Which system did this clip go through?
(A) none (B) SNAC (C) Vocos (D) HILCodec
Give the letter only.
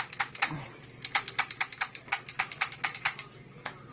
A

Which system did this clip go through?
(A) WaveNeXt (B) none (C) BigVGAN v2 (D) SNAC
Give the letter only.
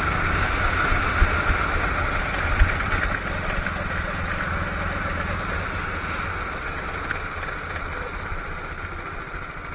B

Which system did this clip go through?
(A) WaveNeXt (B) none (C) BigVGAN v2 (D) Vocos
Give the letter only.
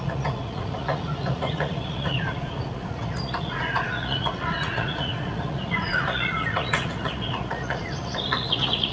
D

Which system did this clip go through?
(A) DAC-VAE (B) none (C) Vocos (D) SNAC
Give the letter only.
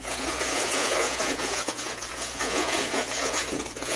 C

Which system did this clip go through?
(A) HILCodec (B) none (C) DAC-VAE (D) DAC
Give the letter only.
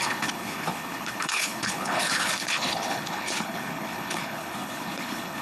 A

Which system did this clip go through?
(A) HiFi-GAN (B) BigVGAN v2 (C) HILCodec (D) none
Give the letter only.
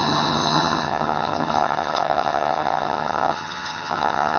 A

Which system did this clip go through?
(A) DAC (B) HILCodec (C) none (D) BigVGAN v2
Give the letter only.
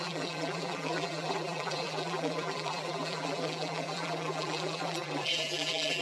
D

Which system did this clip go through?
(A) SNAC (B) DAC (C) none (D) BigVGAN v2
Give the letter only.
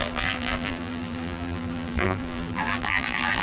D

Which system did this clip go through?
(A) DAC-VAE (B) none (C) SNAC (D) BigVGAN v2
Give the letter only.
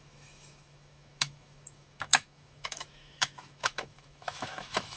A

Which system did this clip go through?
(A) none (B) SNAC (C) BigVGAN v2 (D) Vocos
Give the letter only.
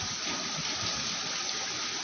A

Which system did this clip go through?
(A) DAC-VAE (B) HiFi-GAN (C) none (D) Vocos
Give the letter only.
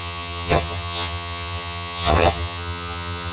B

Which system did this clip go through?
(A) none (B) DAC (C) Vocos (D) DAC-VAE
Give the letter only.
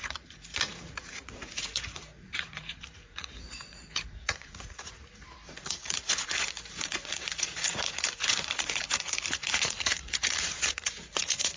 C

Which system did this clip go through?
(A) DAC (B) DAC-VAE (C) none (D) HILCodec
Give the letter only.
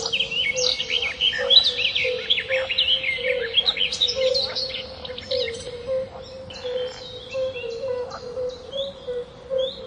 C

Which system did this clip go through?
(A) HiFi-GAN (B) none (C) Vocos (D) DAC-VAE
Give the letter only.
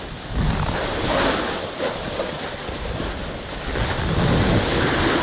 B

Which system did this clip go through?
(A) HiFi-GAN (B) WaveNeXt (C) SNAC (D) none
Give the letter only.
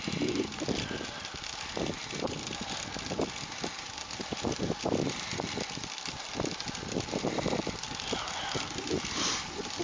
D